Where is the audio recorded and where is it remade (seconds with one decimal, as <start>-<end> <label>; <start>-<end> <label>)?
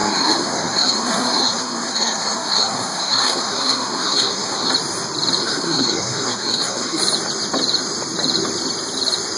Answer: 0.0-4.7 remade; 4.7-5.4 recorded; 5.4-7.0 remade; 7.0-9.4 recorded